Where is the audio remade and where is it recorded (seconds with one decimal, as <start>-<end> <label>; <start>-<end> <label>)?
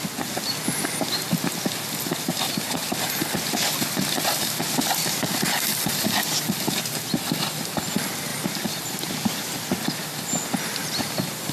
0.0-2.3 recorded; 2.3-2.9 remade; 2.9-8.3 recorded; 8.3-9.1 remade; 9.1-11.5 recorded